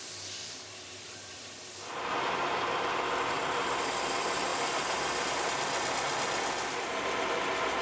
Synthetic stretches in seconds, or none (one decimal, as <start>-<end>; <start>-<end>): none